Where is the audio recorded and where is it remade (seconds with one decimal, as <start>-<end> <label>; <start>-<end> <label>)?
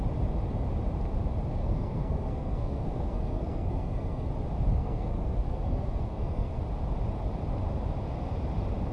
0.0-1.6 recorded; 1.6-4.3 remade; 4.3-4.7 recorded; 4.7-6.6 remade; 6.6-8.9 recorded